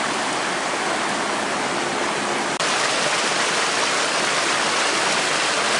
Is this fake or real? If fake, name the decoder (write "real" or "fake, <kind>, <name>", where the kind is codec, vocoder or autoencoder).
real